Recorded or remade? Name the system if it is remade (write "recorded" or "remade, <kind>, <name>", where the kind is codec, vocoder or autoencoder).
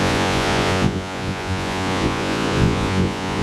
remade, vocoder, Vocos